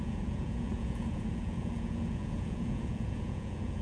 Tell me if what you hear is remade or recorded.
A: remade